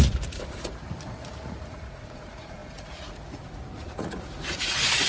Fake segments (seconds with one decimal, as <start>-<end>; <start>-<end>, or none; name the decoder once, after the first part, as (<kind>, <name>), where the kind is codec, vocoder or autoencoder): 0.0-0.8 (vocoder, Vocos); 1.6-5.1